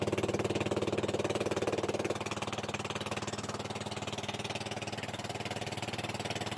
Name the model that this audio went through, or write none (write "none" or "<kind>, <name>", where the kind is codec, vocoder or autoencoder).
none